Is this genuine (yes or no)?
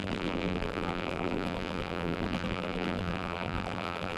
no